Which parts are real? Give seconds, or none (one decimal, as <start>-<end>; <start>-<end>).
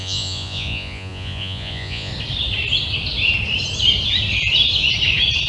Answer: 2.1-5.5